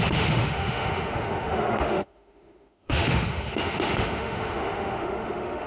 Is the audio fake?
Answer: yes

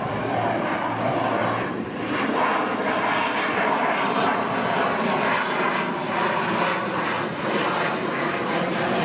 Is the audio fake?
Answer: no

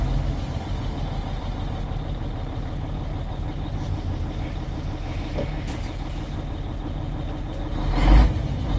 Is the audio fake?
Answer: no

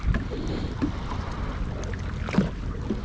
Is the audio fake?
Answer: no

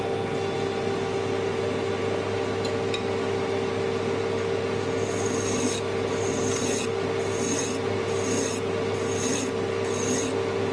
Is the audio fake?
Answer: no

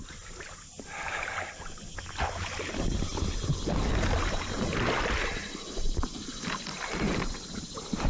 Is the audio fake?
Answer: no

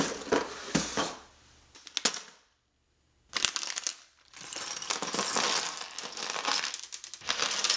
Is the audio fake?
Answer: no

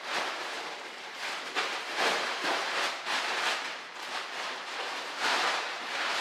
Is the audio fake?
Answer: yes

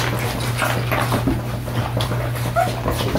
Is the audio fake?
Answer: no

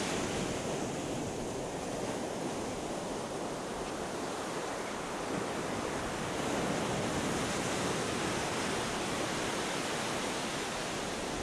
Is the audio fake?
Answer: no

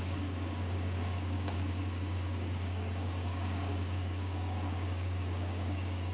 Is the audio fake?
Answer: yes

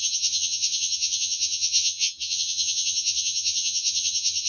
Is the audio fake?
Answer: yes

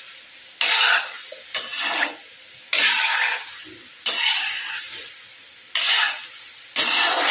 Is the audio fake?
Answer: no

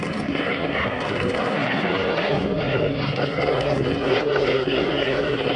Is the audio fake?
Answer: yes